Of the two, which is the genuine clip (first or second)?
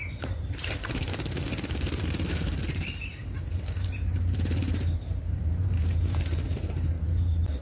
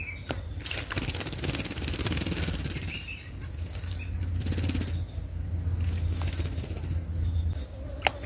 second